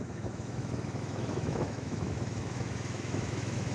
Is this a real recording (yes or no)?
no